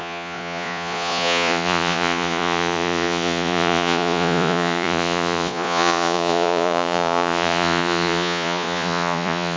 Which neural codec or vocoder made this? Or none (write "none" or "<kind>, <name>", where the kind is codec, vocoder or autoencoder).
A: vocoder, Vocos